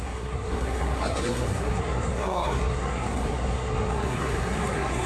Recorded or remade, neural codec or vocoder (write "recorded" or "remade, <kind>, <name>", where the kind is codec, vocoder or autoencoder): remade, codec, SNAC